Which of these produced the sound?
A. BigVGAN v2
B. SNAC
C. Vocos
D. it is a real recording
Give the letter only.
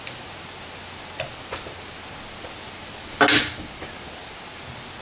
D